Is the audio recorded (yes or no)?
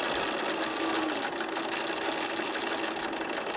yes